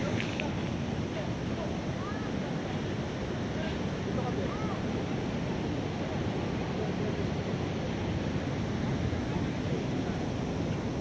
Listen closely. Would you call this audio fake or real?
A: real